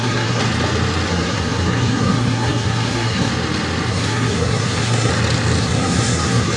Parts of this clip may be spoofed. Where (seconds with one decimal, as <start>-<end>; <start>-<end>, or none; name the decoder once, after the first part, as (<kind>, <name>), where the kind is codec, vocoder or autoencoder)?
0.0-0.4 (codec, SNAC); 1.1-3.3; 3.9-5.1; 5.6-6.6